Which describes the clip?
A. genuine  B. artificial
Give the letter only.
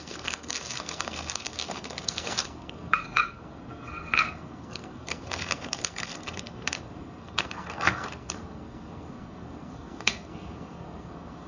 B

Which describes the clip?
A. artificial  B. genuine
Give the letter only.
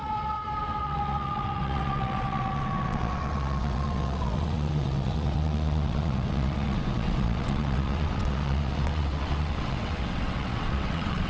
A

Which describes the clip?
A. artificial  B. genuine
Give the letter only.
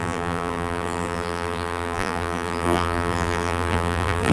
A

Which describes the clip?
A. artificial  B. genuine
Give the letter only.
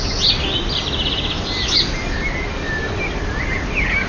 B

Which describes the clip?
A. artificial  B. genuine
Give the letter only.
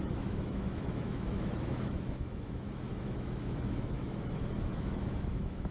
A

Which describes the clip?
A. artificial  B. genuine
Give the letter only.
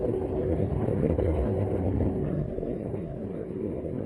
A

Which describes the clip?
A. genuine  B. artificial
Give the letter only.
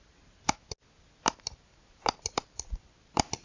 A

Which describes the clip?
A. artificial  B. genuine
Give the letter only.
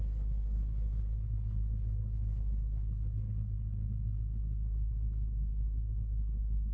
A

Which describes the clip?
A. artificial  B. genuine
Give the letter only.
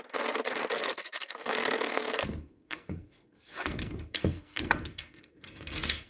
A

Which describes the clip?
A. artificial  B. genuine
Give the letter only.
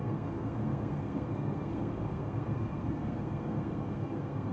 A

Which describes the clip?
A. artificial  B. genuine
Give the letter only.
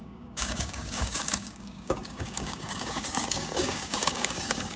A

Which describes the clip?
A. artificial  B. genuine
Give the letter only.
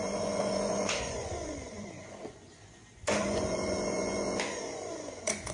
A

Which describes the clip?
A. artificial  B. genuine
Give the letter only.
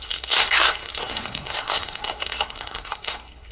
A